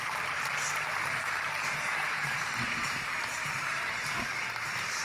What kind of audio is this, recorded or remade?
remade